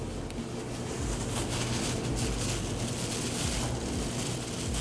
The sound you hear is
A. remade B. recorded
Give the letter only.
B